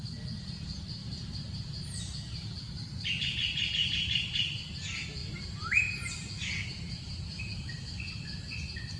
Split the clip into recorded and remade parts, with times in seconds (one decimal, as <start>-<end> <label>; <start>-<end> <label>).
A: 0.0-1.0 recorded; 1.0-2.0 remade; 2.0-3.8 recorded; 3.8-4.7 remade; 4.7-5.2 recorded; 5.2-7.7 remade; 7.7-9.0 recorded